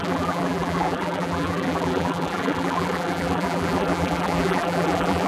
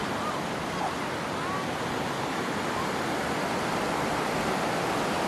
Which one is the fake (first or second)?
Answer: first